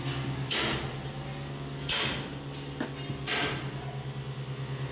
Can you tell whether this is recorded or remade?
recorded